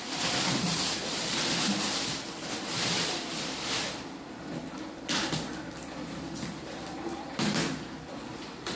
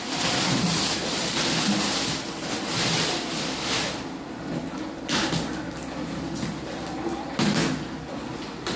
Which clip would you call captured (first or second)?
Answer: second